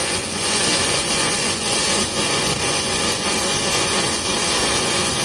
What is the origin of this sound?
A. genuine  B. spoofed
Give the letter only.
B